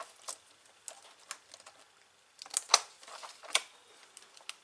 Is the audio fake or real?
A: real